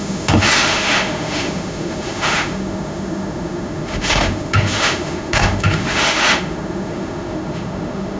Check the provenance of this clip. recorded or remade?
remade